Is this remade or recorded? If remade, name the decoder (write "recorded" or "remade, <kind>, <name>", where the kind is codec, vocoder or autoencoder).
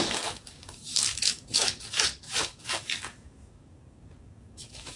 remade, codec, DAC